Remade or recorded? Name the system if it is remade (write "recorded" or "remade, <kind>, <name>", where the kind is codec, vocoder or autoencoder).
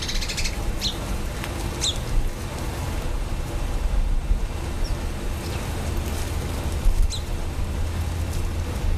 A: recorded